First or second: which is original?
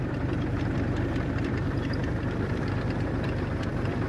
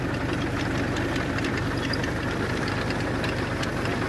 second